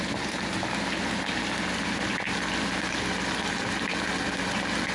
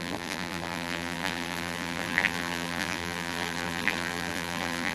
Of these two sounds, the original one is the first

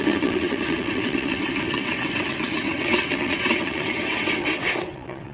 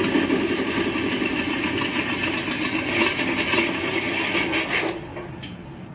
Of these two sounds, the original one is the second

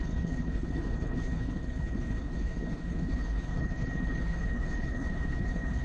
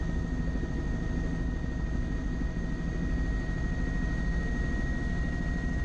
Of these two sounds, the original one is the second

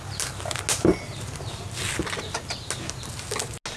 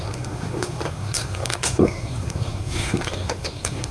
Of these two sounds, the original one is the first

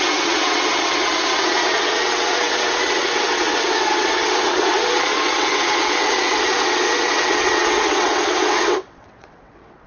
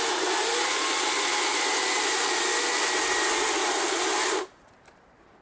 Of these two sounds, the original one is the second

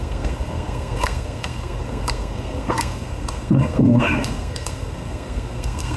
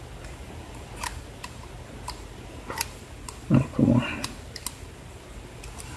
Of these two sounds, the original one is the second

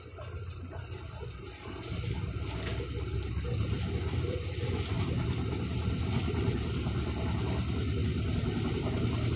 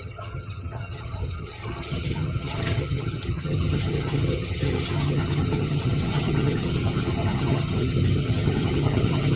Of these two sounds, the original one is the first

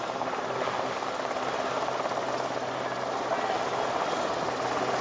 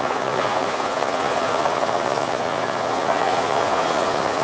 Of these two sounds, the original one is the first